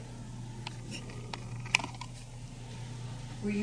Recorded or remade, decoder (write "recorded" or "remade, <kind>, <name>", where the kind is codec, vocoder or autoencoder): recorded